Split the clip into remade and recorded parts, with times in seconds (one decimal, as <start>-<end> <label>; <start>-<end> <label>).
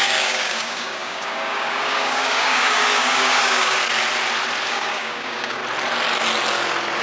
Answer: 0.0-3.8 remade; 3.8-4.7 recorded; 4.7-5.6 remade; 5.6-7.0 recorded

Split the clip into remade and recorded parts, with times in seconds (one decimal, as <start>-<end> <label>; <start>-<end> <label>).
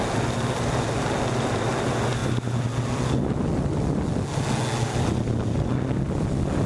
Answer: 0.0-6.7 recorded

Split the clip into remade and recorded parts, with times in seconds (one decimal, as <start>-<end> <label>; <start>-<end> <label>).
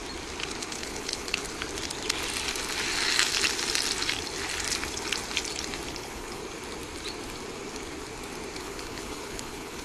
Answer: 0.0-0.7 recorded; 0.7-1.4 remade; 1.4-5.9 recorded; 5.9-6.4 remade; 6.4-8.6 recorded; 8.6-9.8 remade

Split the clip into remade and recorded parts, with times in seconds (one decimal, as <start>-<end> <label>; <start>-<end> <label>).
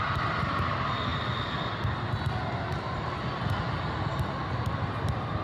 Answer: 0.0-5.4 recorded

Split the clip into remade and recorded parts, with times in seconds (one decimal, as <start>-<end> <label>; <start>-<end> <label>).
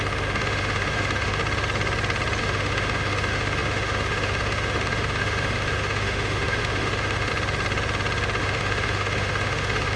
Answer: 0.0-1.4 remade; 1.4-2.4 recorded; 2.4-7.3 remade; 7.3-8.4 recorded; 8.4-10.0 remade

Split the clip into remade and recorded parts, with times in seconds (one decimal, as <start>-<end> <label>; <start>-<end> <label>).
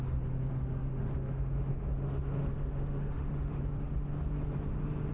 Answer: 0.0-0.5 recorded; 0.5-3.6 remade; 3.6-5.1 recorded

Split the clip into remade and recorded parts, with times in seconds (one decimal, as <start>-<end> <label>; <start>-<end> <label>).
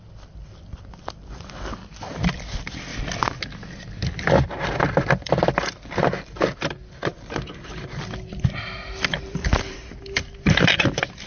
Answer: 0.0-2.9 remade; 2.9-5.1 recorded; 5.1-11.3 remade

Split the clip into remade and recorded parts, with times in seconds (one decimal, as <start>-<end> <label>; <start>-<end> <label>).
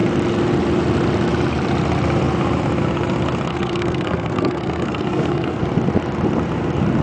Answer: 0.0-3.5 recorded; 3.5-5.6 remade; 5.6-7.0 recorded